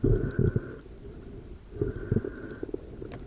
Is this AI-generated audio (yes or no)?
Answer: no